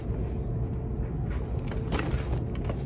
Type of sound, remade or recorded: recorded